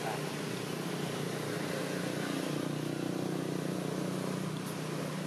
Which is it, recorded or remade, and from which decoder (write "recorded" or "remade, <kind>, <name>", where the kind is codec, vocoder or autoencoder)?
recorded